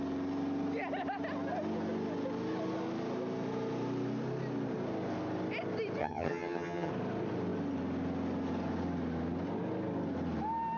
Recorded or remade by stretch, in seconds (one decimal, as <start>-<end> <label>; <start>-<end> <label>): 0.0-6.0 recorded; 6.0-6.9 remade; 6.9-10.8 recorded